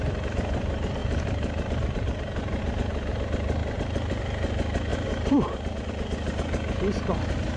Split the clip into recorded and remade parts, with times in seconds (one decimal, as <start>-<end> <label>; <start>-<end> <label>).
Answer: 0.0-1.0 recorded; 1.0-2.6 remade; 2.6-3.6 recorded; 3.6-4.2 remade; 4.2-4.9 recorded; 4.9-5.9 remade; 5.9-7.6 recorded